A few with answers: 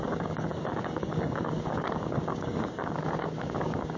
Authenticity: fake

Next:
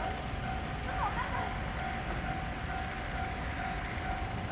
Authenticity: real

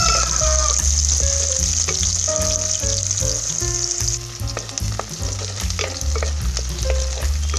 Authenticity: real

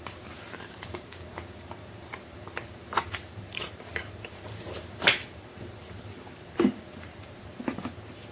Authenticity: fake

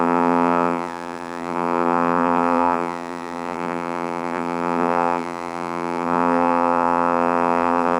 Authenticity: fake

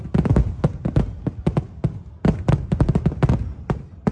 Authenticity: real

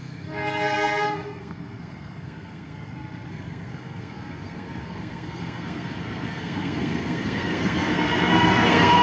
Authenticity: fake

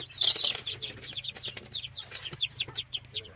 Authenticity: real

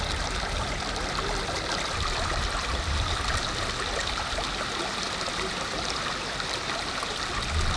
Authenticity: fake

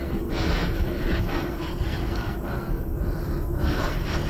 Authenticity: fake